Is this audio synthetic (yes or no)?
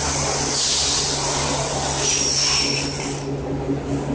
no